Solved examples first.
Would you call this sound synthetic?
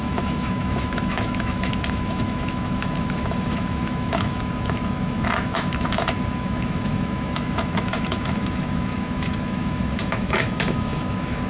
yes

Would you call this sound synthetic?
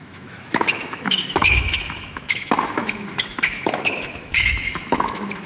yes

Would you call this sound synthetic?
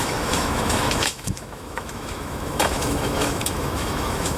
yes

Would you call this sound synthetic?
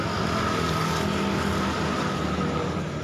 no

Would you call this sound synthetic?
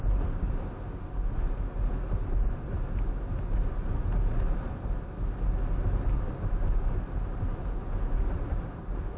no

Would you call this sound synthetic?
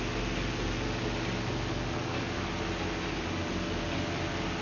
no